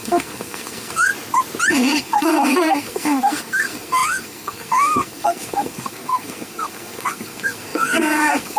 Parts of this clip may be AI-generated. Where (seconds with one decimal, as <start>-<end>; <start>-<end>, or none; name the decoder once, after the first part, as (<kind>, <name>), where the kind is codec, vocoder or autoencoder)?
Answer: 0.0-1.1 (codec, SNAC); 1.7-8.6